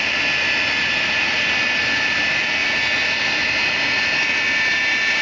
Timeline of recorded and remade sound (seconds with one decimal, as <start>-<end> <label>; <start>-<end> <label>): 0.0-5.2 recorded